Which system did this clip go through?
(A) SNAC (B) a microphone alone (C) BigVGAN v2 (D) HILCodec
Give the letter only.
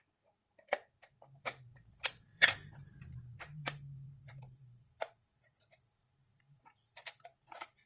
C